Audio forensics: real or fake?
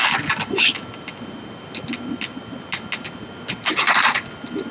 real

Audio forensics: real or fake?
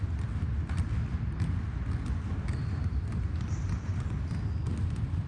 real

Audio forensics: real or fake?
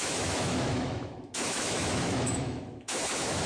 fake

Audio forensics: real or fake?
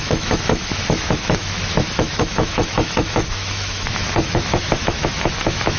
fake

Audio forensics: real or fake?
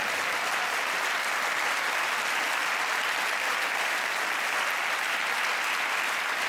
real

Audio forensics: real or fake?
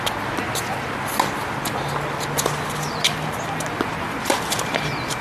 real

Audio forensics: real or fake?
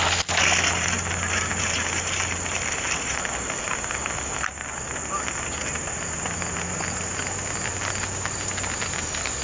real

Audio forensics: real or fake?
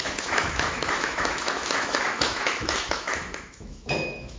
fake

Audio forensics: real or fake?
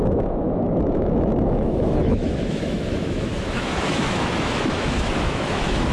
fake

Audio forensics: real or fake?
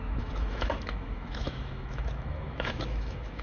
fake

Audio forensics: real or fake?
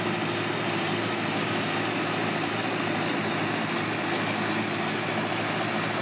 real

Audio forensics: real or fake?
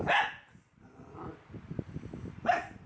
real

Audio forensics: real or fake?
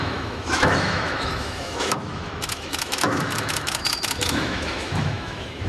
fake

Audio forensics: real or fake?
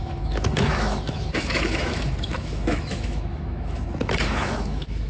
fake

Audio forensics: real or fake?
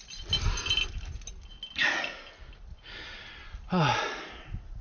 real